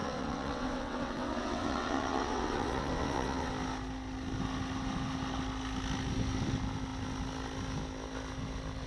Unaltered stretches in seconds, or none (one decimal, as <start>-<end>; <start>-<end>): 3.5-8.9

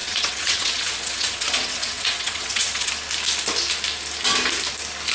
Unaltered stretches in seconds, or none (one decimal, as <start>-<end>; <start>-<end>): 2.9-5.1

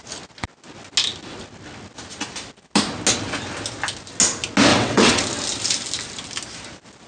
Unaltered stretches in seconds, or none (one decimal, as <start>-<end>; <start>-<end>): 0.0-4.7; 5.2-7.1

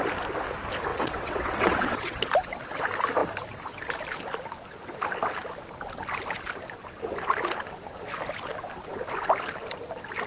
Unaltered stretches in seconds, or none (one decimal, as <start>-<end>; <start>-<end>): 0.0-0.9; 2.2-10.3

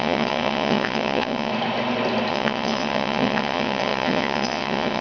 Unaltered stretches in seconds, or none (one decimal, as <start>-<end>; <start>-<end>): 1.5-2.3